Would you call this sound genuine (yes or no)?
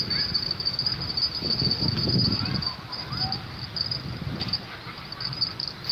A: yes